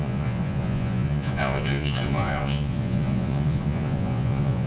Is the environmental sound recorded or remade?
remade